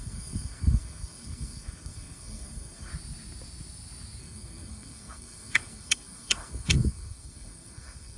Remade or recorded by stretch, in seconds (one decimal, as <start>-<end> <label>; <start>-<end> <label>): 0.0-2.9 remade; 2.9-4.2 recorded; 4.2-8.2 remade